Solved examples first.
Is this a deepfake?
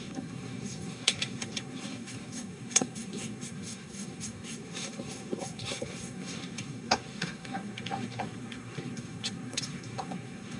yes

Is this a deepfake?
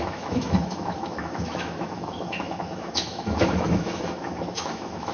yes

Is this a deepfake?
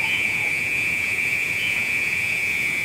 yes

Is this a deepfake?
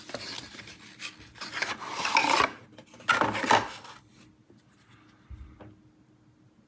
no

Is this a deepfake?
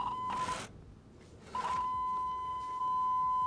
no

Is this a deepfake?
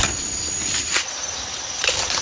no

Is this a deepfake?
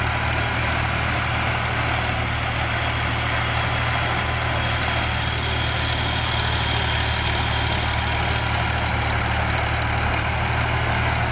no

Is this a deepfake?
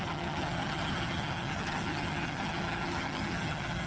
yes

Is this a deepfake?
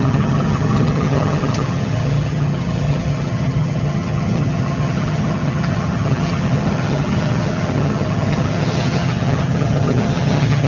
yes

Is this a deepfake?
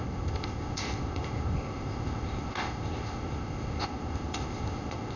yes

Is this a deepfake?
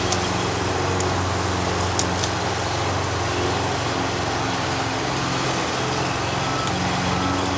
no